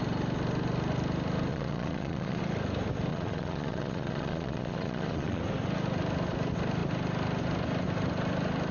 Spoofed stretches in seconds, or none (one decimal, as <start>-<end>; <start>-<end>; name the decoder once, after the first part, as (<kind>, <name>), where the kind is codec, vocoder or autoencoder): 1.5-2.4 (vocoder, Vocos); 3.1-5.4